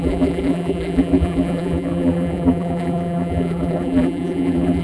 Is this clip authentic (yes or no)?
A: no